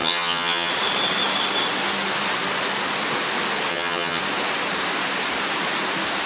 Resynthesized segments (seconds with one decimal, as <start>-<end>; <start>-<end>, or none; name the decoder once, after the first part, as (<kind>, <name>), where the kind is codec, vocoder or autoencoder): 0.0-0.7 (vocoder, HiFi-GAN); 3.7-4.2